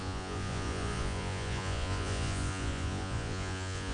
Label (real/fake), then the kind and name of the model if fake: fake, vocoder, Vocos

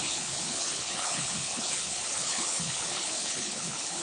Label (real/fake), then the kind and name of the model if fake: fake, codec, HILCodec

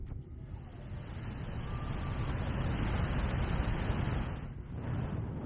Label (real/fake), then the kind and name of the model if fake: real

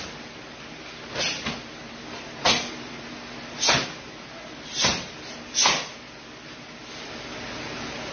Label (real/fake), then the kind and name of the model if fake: real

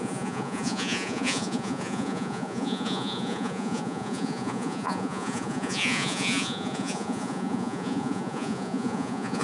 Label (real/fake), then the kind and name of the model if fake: fake, vocoder, Vocos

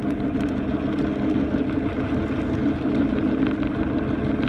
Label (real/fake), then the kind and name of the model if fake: real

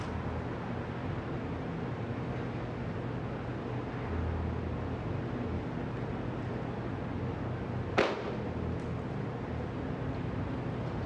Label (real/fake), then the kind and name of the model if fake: real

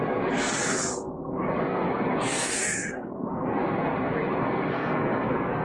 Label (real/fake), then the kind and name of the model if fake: fake, codec, SNAC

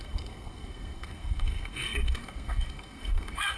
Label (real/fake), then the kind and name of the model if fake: fake, codec, SNAC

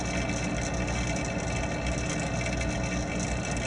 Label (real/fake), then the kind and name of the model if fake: real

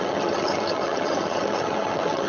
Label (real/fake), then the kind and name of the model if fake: fake, vocoder, HiFi-GAN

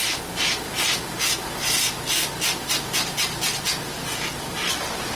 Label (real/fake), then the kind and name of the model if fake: real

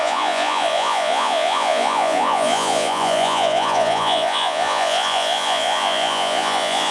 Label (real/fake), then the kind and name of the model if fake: fake, vocoder, Vocos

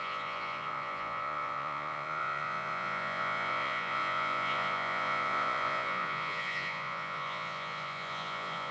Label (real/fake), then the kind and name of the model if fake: fake, vocoder, Vocos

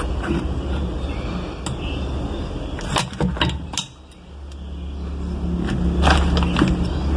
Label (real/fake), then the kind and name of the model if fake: real